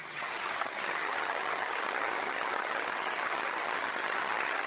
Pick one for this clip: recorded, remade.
remade